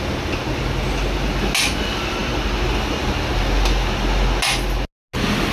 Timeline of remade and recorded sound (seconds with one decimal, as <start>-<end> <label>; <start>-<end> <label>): 0.0-5.5 recorded